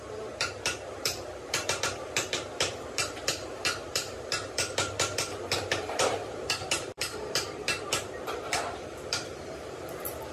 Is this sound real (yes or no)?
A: no